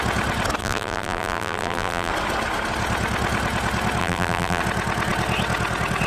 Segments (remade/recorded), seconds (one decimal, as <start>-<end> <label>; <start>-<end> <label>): 0.0-0.6 recorded; 0.6-2.1 remade; 2.1-4.0 recorded; 4.0-4.6 remade; 4.6-6.1 recorded